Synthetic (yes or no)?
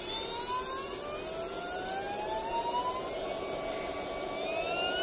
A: no